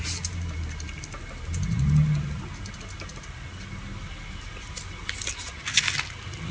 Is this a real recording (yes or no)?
yes